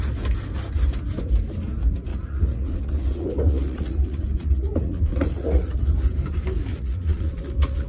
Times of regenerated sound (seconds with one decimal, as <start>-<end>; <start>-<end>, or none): 2.1-5.9; 6.7-7.9